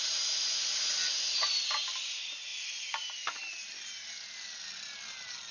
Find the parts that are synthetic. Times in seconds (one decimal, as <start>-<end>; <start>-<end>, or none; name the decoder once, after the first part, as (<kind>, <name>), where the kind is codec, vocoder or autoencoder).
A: none